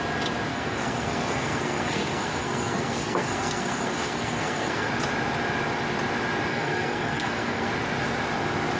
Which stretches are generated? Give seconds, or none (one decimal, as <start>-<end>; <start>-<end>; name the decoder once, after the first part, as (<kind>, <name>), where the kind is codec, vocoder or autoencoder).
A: 0.5-4.9 (codec, SNAC); 6.5-7.7